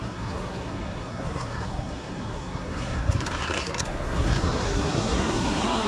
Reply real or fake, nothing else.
fake